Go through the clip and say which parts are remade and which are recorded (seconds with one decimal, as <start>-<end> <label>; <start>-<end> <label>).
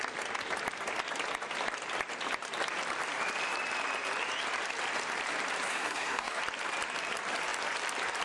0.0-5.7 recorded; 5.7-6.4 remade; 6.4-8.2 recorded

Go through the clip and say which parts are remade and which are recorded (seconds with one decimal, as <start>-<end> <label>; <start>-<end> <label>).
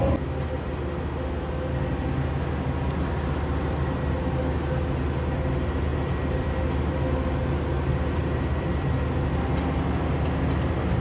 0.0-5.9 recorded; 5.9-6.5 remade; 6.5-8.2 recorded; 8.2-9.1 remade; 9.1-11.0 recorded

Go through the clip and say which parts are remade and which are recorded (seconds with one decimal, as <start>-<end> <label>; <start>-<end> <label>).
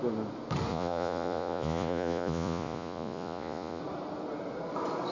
0.0-0.7 recorded; 0.7-3.8 remade; 3.8-5.1 recorded